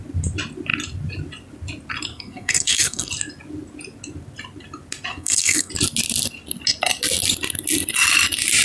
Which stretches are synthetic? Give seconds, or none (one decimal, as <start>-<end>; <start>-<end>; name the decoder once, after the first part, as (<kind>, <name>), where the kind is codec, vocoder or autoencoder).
2.1-3.1 (codec, SNAC); 5.1-5.7